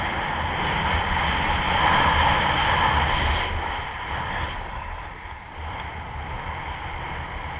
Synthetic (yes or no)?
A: no